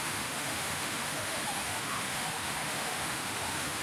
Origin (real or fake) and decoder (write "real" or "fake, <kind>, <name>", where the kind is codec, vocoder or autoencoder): fake, autoencoder, DAC-VAE